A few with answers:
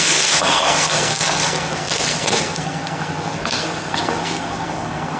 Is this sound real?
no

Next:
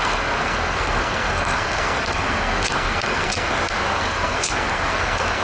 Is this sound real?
no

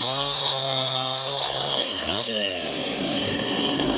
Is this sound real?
no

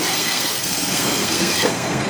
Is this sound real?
no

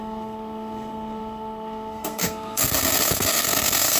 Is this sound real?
no